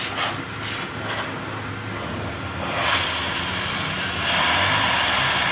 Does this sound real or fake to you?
real